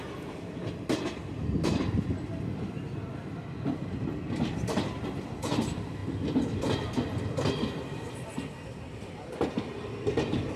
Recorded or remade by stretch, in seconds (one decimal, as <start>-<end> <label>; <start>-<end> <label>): 0.0-10.6 recorded

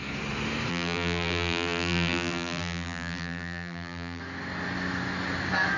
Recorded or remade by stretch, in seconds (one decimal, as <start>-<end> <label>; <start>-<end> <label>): 0.0-0.7 recorded; 0.7-4.2 remade; 4.2-5.8 recorded

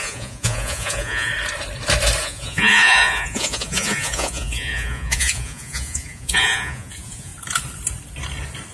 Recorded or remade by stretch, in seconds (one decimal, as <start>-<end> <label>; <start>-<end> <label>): 0.0-1.3 remade; 1.3-2.2 recorded; 2.2-7.3 remade; 7.3-8.7 recorded